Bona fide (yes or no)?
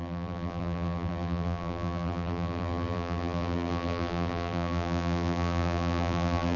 no